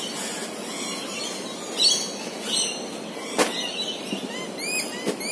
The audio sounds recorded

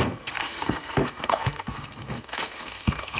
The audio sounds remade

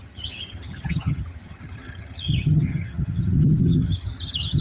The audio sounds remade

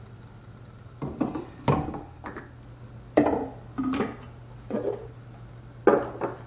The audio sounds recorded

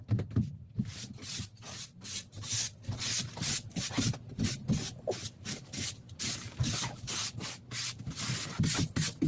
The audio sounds recorded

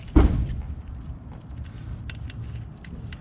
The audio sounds recorded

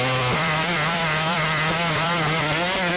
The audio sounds remade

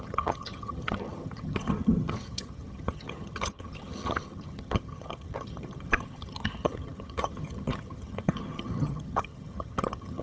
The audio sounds remade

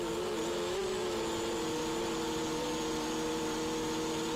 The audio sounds recorded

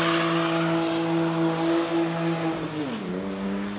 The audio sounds recorded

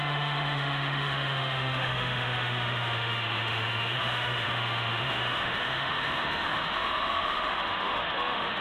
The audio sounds remade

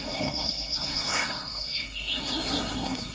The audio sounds remade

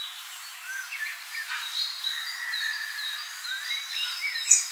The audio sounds remade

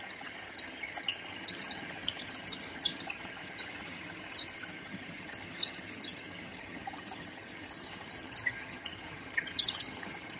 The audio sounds remade